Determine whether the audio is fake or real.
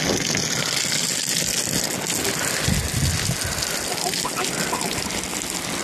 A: real